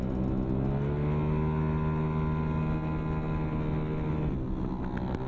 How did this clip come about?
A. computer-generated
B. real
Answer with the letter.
B